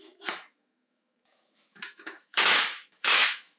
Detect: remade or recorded remade